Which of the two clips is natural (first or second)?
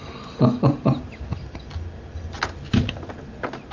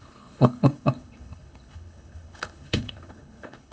first